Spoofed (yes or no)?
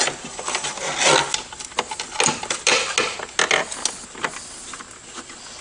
no